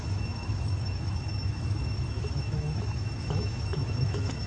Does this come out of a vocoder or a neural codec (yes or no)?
yes